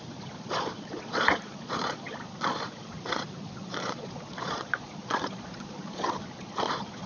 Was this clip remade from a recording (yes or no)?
yes